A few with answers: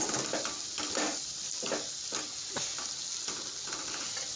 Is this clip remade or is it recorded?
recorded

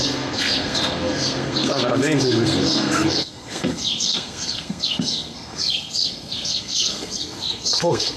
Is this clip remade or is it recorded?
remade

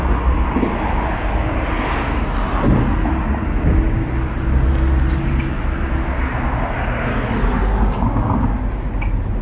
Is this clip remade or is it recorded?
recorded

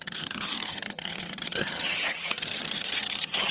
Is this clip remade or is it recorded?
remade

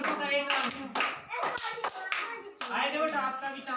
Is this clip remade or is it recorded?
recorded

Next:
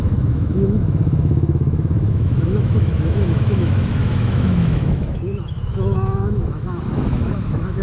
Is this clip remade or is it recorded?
remade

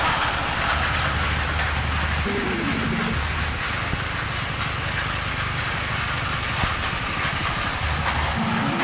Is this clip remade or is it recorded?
recorded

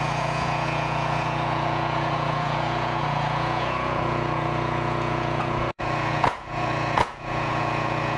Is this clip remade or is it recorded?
remade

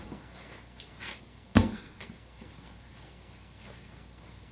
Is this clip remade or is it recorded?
remade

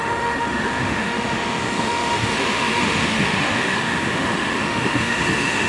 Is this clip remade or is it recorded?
remade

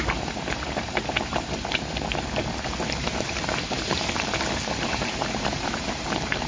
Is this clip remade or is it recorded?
remade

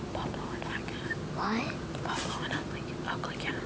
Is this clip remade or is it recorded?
recorded